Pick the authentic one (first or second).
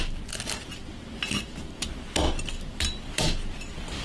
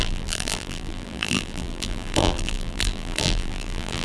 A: first